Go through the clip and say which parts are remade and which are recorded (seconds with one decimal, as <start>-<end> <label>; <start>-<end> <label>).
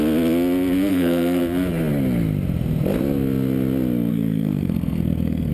0.0-0.9 recorded; 0.9-1.4 remade; 1.4-4.1 recorded; 4.1-5.5 remade